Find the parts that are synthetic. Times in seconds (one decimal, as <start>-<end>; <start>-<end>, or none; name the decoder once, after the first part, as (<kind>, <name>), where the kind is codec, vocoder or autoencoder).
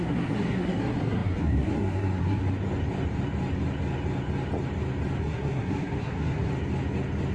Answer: 0.0-2.4 (codec, SNAC); 5.2-6.5